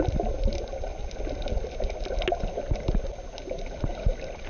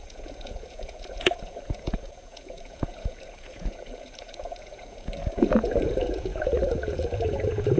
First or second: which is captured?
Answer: first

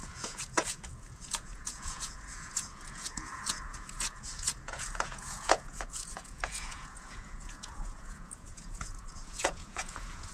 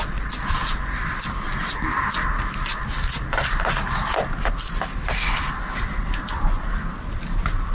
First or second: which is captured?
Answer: second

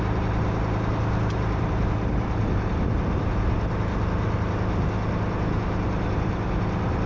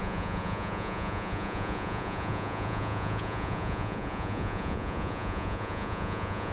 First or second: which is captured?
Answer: first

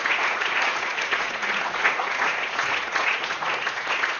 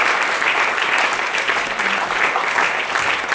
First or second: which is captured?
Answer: second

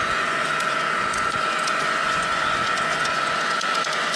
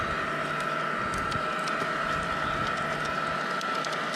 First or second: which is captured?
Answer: second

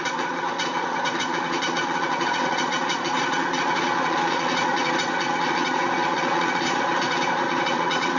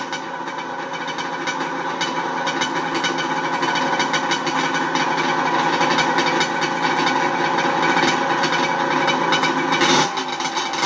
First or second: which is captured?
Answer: second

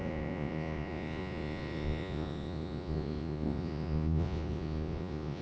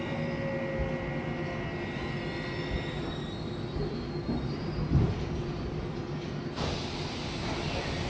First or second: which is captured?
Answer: second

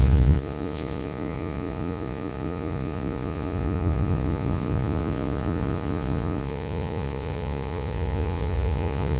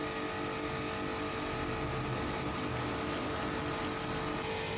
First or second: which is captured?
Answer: second